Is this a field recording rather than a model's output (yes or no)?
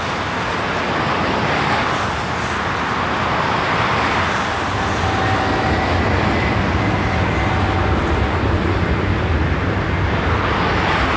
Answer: yes